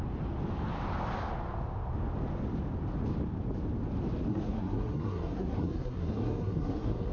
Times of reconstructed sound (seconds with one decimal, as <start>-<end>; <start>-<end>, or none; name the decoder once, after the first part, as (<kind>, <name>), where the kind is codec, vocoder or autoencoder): 4.3-7.1 (codec, SNAC)